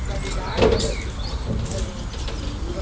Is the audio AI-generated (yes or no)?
no